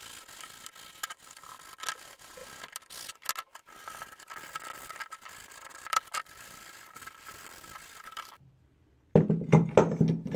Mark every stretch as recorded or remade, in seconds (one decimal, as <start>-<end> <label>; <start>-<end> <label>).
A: 0.0-5.7 recorded; 5.7-7.1 remade; 7.1-10.4 recorded